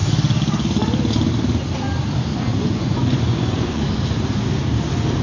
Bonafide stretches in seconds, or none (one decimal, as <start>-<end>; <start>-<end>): 0.0-2.3; 3.8-5.2